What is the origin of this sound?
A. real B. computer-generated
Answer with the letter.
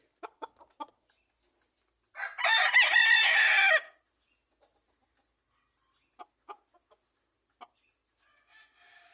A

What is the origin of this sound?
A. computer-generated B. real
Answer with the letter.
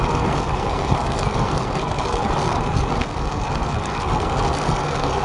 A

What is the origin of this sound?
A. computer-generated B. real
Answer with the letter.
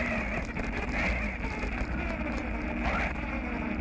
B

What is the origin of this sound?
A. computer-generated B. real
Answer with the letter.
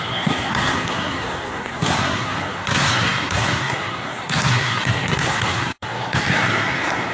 A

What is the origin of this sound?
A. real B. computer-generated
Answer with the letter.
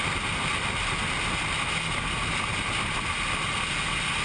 A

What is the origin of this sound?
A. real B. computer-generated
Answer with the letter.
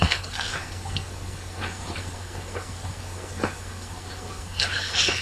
B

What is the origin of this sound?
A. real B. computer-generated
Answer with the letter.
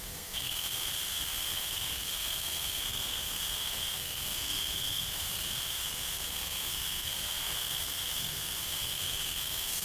B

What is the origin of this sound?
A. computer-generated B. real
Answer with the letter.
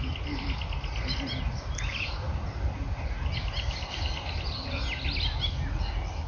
B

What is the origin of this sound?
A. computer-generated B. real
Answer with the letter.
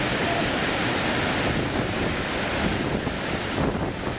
B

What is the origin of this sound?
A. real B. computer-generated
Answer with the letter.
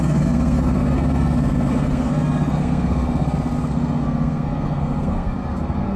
B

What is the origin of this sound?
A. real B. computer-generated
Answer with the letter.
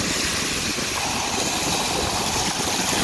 A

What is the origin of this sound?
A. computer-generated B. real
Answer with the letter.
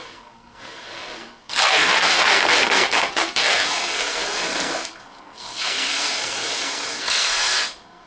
A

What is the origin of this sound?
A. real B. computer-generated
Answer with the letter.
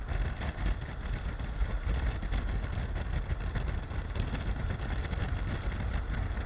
A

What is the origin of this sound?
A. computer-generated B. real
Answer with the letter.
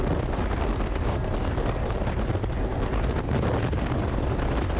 B